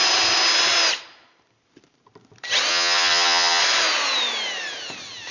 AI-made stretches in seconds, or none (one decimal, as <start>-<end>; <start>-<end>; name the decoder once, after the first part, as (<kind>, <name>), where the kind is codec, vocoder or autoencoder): 2.7-3.6 (vocoder, HiFi-GAN)